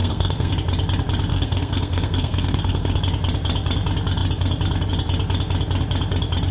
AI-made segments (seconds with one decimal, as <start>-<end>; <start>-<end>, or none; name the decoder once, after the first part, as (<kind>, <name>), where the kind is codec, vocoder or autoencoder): 0.0-0.5 (codec, SNAC); 1.3-3.0